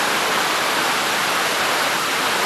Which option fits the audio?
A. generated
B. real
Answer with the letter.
B